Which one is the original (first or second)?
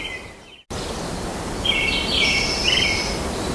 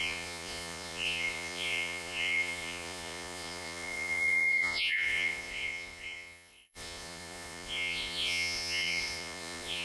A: first